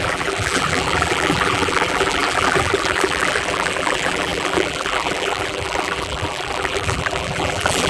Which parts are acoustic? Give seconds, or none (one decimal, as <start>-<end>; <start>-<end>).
none